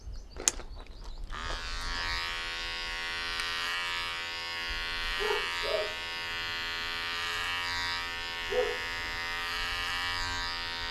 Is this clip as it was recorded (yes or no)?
yes